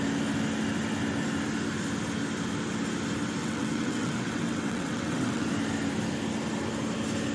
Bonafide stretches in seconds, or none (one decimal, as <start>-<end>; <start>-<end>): 0.0-3.4; 5.5-7.3